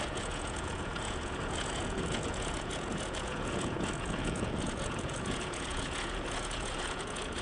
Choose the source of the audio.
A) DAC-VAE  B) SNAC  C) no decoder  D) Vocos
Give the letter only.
D